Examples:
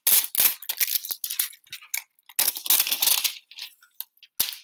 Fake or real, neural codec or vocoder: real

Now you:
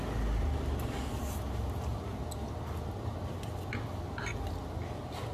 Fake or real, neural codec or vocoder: real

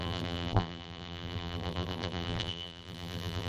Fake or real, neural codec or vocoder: fake, vocoder, BigVGAN v2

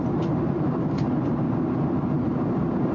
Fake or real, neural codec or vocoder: fake, vocoder, BigVGAN v2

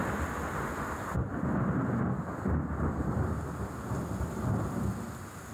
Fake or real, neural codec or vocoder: real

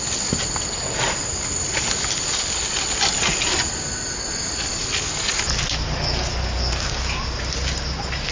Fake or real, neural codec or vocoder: real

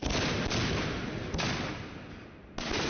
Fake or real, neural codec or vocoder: real